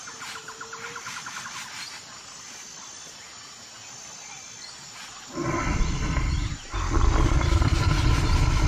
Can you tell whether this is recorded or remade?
recorded